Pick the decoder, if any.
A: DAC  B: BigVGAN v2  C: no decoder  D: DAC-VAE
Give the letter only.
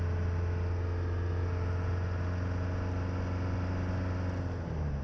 C